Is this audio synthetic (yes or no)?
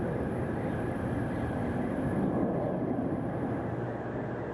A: no